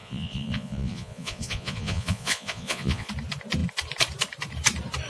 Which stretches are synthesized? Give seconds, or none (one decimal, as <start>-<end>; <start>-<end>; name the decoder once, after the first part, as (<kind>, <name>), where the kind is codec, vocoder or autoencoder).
0.0-3.1 (vocoder, Vocos)